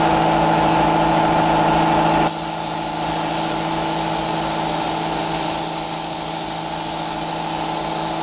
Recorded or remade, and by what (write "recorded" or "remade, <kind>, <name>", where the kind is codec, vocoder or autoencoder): recorded